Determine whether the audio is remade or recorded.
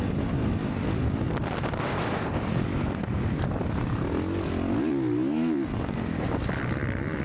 recorded